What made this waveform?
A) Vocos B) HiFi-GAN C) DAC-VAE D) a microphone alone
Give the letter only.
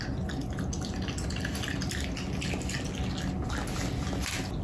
D